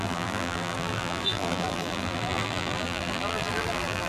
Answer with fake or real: fake